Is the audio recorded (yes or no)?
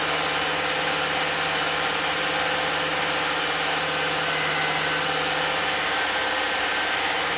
yes